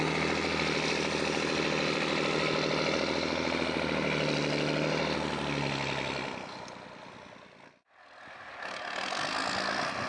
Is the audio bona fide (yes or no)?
yes